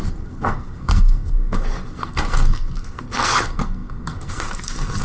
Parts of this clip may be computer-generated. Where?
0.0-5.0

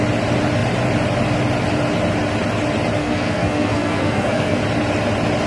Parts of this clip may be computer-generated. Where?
3.0-4.6

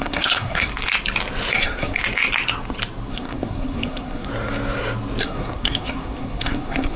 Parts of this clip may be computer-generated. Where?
0.0-0.7; 1.5-2.0; 3.1-4.3; 5.2-7.0

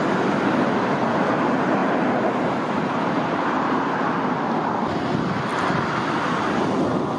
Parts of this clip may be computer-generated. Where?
none

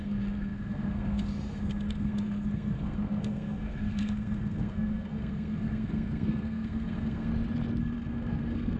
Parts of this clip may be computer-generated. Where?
0.0-7.3; 7.8-8.8

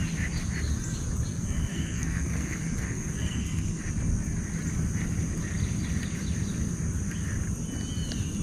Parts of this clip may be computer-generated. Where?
1.3-3.8

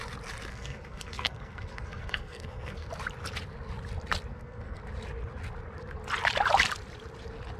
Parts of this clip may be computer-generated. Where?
0.5-2.9; 4.3-4.8

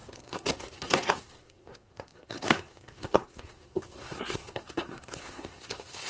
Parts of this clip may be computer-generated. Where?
0.0-6.1